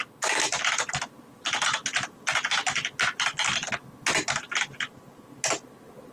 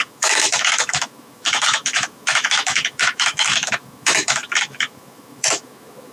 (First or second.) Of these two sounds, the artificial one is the second